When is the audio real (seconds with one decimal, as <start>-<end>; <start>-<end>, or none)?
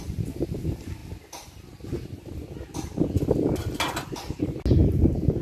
0.0-5.4